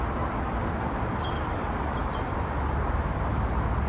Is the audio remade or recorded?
recorded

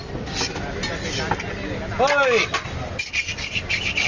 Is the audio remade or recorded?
recorded